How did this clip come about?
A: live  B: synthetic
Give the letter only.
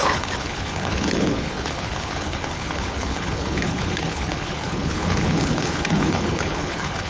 B